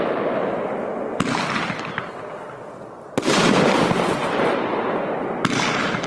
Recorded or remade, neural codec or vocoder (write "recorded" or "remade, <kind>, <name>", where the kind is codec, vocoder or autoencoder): recorded